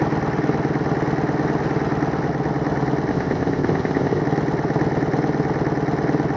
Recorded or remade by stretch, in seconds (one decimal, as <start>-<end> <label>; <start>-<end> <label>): 0.0-3.1 recorded; 3.1-4.2 remade; 4.2-6.4 recorded